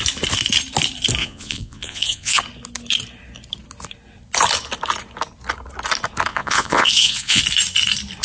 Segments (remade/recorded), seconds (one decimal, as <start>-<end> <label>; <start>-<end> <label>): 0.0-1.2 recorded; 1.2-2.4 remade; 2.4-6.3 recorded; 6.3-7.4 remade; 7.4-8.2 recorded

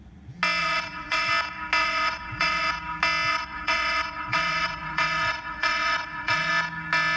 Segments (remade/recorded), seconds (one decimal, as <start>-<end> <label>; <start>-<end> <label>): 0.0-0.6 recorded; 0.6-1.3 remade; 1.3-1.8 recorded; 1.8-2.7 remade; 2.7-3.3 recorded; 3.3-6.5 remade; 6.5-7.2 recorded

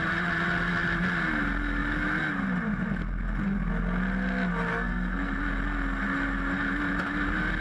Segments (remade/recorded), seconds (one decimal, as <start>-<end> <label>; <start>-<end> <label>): 0.0-4.7 recorded; 4.7-5.4 remade; 5.4-7.6 recorded

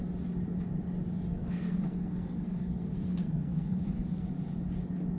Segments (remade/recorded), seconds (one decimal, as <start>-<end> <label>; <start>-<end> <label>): 0.0-1.3 recorded; 1.3-4.3 remade; 4.3-5.2 recorded

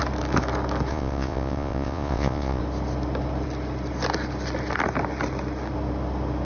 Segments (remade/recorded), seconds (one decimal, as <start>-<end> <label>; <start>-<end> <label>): 0.0-0.9 recorded; 0.9-2.6 remade; 2.6-6.4 recorded

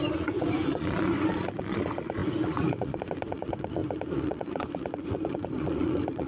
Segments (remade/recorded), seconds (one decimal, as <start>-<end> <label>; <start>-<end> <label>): 0.0-6.3 remade

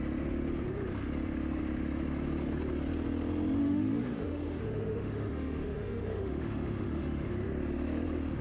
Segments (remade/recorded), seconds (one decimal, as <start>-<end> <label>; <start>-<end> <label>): 0.0-3.6 recorded; 3.6-7.3 remade; 7.3-8.4 recorded

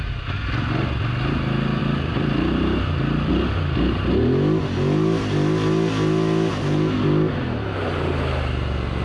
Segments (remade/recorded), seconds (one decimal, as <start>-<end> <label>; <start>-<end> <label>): 0.0-1.8 recorded; 1.8-3.3 remade; 3.3-9.0 recorded